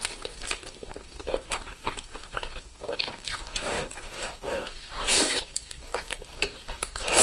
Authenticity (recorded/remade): remade